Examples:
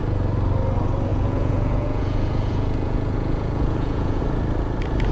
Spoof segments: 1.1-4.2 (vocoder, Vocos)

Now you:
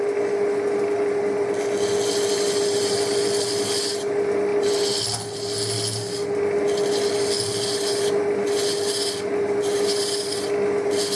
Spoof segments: none

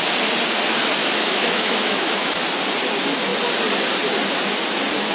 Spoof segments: 1.0-2.3 (autoencoder, DAC-VAE)